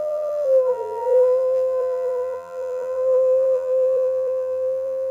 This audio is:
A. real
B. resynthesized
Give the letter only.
B